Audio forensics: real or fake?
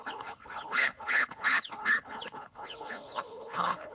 fake